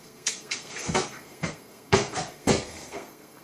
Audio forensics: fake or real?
fake